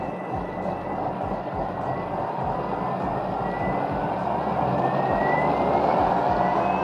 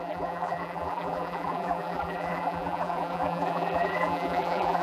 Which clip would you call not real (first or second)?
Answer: second